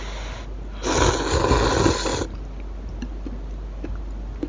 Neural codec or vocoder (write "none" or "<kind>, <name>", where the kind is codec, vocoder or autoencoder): none